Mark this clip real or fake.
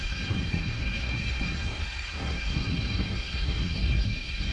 fake